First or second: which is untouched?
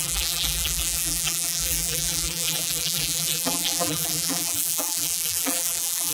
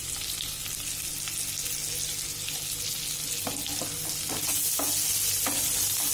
second